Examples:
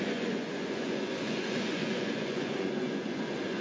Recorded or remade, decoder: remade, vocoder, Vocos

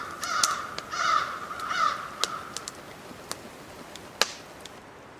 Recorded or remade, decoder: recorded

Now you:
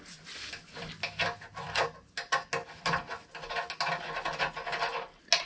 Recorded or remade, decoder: recorded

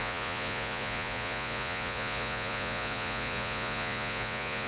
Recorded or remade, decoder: remade, vocoder, Vocos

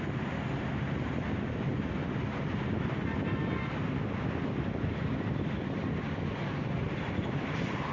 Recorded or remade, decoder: recorded